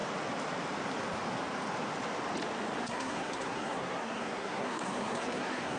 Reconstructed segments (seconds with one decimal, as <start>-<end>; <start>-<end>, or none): 2.8-5.8